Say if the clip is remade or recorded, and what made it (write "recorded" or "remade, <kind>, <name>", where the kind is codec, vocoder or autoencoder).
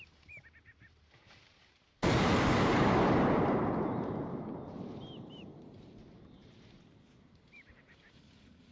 remade, vocoder, BigVGAN v2